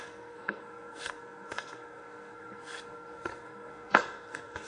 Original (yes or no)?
no